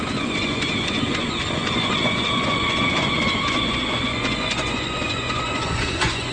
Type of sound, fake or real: fake